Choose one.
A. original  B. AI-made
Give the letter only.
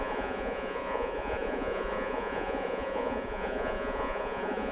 B